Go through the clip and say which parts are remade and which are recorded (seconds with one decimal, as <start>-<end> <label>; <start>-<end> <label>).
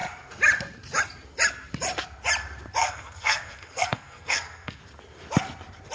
0.0-2.8 recorded; 2.8-4.8 remade; 4.8-5.9 recorded